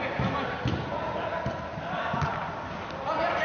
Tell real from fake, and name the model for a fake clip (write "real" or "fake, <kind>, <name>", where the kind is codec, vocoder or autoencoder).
real